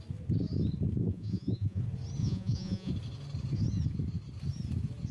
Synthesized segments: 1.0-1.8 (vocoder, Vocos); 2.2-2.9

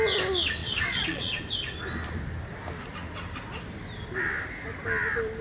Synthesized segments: 0.6-1.4 (vocoder, Vocos)

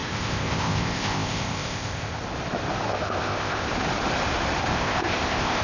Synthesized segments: 0.0-2.2 (codec, ZipCodec); 2.9-3.7; 4.7-5.6

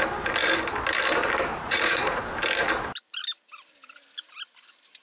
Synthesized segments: 1.5-2.2 (vocoder, Vocos)

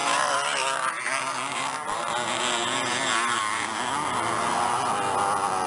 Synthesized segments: none

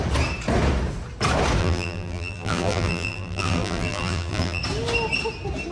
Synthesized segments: 1.6-4.6 (vocoder, BigVGAN v2)